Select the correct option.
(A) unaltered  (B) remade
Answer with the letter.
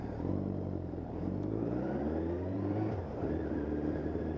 B